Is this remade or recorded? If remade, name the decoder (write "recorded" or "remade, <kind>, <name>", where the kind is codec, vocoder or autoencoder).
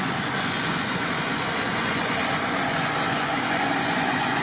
remade, vocoder, Vocos